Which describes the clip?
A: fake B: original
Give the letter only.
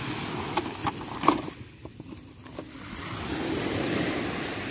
B